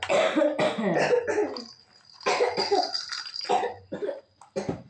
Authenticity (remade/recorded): recorded